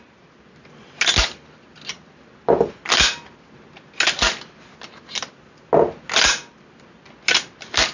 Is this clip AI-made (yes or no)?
no